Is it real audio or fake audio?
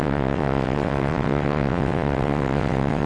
fake